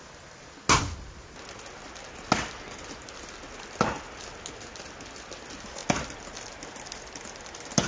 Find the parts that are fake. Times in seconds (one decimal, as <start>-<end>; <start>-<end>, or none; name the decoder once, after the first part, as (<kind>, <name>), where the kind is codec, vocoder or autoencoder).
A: none

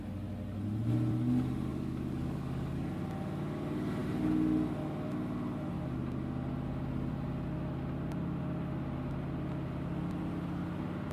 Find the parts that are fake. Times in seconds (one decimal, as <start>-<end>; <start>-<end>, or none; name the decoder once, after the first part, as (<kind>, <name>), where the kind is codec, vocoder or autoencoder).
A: 1.7-2.9 (codec, DAC)

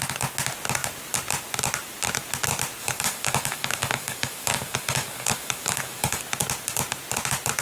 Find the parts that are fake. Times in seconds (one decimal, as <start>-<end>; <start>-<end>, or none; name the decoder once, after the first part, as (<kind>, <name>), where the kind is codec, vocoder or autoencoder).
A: 2.8-6.2 (codec, DAC)

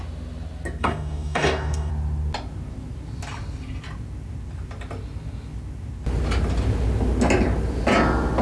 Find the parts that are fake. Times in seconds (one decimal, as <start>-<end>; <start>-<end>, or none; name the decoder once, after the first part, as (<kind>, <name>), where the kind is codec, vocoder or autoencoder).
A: 0.8-1.9 (codec, DAC)

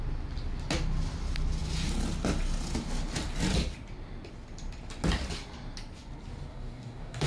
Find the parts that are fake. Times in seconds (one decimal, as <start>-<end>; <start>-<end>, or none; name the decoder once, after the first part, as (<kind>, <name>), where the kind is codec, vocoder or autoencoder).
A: 6.5-7.3 (codec, DAC)